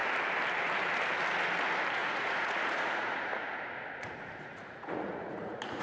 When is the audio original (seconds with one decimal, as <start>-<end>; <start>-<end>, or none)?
0.0-2.0